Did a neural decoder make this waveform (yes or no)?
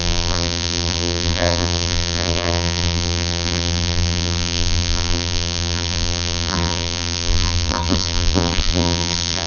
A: yes